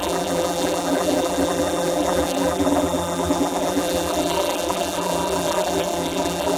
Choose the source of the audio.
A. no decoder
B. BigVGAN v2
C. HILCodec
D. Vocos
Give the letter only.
B